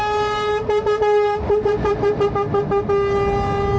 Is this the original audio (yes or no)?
yes